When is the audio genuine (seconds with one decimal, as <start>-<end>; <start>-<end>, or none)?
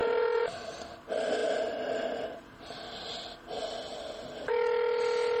0.7-5.4